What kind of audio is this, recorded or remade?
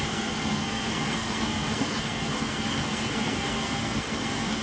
remade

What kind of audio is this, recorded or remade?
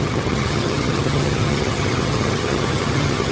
remade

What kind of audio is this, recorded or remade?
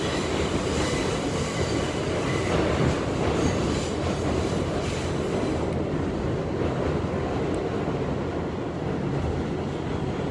recorded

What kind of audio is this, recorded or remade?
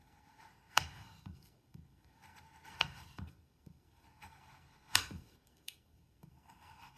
remade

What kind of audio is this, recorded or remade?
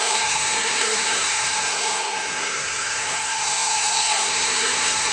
remade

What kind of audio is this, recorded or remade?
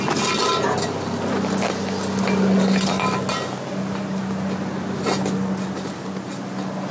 recorded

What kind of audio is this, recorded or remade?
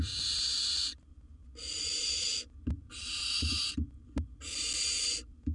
recorded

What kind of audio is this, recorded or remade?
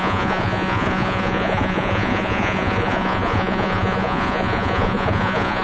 remade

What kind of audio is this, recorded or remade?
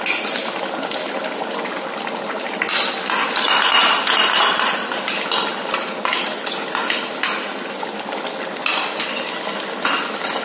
recorded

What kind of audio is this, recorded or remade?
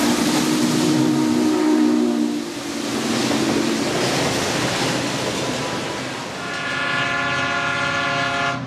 recorded